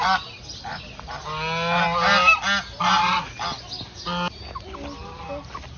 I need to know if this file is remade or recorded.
recorded